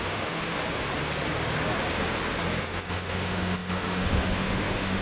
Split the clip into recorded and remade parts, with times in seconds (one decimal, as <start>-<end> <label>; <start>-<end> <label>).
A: 0.0-0.6 remade; 0.6-2.6 recorded; 2.6-5.0 remade